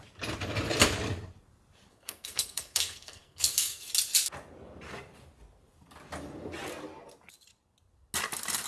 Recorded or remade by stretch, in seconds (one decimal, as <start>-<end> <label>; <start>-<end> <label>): 0.0-1.9 recorded; 1.9-3.9 remade; 3.9-8.7 recorded

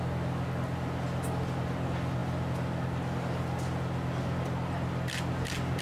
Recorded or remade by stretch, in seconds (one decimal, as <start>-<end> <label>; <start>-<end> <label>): 0.0-5.8 recorded

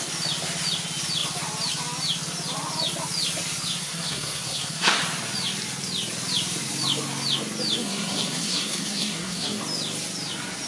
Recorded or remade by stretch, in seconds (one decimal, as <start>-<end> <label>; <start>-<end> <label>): 0.0-3.8 recorded; 3.8-5.0 remade; 5.0-7.8 recorded; 7.8-9.6 remade; 9.6-10.7 recorded

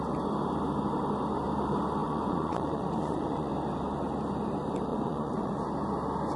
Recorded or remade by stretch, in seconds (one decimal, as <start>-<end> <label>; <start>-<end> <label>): 0.0-2.0 recorded; 2.0-3.5 remade; 3.5-4.9 recorded; 4.9-5.6 remade; 5.6-6.4 recorded